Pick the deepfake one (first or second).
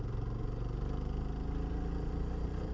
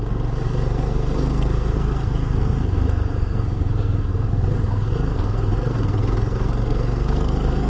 second